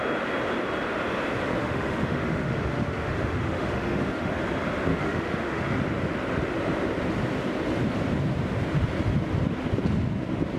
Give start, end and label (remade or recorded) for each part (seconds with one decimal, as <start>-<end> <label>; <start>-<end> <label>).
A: 0.0-1.6 recorded; 1.6-4.3 remade; 4.3-4.9 recorded; 4.9-5.7 remade; 5.7-10.6 recorded